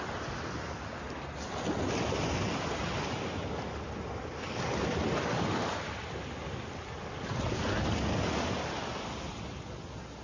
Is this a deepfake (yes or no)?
no